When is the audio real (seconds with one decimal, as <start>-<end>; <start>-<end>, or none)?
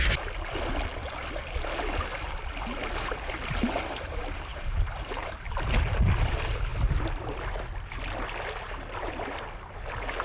0.0-4.5; 5.3-10.2